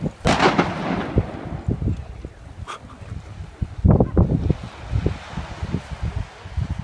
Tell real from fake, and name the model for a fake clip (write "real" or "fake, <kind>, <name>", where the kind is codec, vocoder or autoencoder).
real